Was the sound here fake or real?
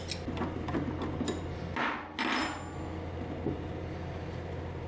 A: real